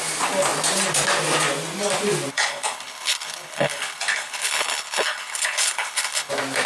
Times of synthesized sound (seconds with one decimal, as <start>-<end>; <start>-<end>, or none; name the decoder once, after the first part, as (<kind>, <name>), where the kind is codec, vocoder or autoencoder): 2.3-6.3 (codec, HILCodec)